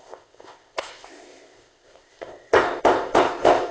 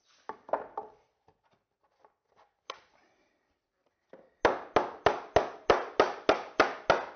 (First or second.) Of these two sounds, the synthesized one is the first